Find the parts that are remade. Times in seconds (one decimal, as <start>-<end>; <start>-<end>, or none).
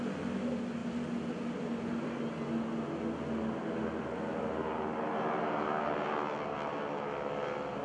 none